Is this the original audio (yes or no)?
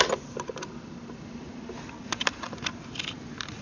yes